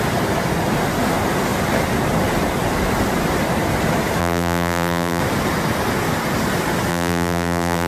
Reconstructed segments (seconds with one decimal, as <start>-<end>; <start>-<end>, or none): 4.2-5.2; 6.9-7.9